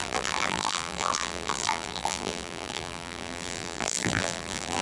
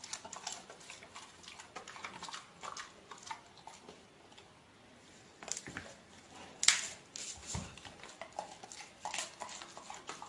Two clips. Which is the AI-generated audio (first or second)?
first